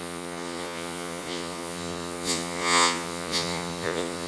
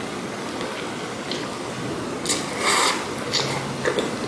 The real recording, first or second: second